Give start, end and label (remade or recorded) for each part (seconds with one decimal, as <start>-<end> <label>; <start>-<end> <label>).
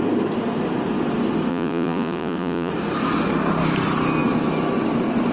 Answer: 0.0-1.5 recorded; 1.5-2.7 remade; 2.7-5.3 recorded